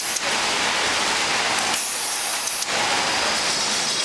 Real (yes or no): yes